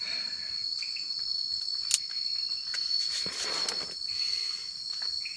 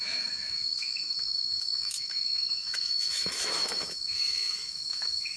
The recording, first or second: first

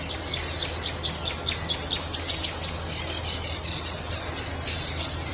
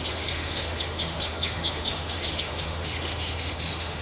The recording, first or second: first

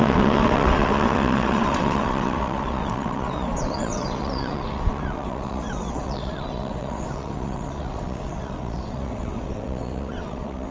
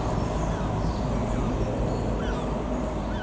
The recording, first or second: second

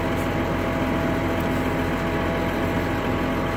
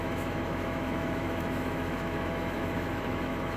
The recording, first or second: first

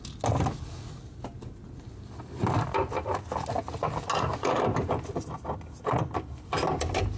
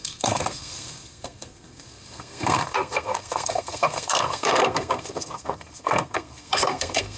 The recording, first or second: first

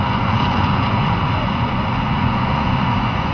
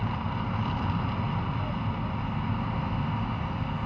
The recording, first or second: second